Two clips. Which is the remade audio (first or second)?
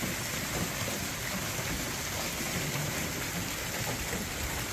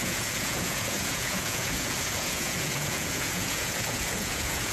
second